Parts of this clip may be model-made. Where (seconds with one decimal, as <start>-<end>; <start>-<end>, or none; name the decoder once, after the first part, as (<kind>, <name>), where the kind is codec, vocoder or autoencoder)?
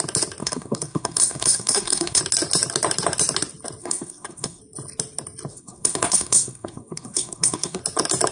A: 0.4-2.2 (codec, SNAC); 3.8-4.6; 5.5-7.8